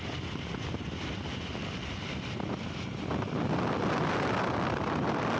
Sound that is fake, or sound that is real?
real